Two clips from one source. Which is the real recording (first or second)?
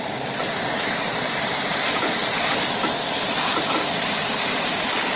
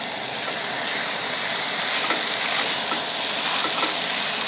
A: second